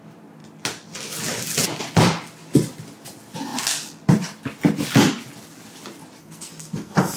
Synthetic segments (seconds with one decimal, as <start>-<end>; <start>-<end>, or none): 6.2-7.2